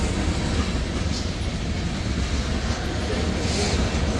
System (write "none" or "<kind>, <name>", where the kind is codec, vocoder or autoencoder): none